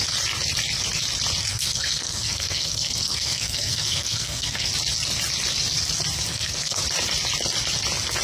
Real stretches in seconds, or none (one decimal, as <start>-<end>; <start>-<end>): 0.0-1.5; 4.7-6.3; 6.8-8.2